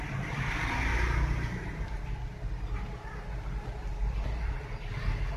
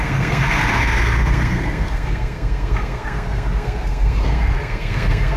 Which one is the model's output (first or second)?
second